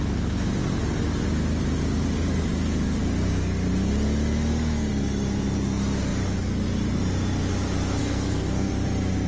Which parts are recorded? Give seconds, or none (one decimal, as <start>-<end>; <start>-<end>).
0.0-8.0; 8.7-9.3